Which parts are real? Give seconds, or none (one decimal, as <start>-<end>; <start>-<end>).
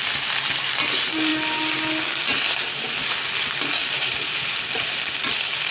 0.0-3.8; 4.6-5.7